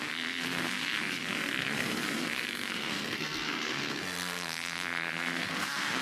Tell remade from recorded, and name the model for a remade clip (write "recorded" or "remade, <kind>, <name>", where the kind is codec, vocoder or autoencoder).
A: remade, codec, SNAC